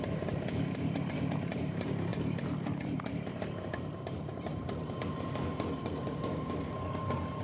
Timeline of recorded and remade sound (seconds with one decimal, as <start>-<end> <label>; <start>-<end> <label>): 0.0-7.4 remade